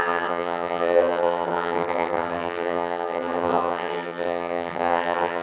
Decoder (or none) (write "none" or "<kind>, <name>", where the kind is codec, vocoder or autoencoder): vocoder, HiFi-GAN